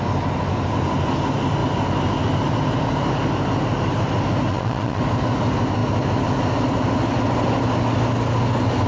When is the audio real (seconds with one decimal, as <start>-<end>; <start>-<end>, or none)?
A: 0.0-4.5; 5.0-8.9